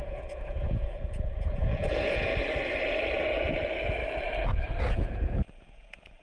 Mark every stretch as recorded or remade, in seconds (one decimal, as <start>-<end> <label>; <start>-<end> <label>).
0.0-2.3 remade; 2.3-4.8 recorded; 4.8-6.2 remade